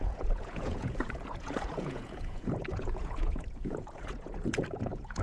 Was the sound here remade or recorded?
remade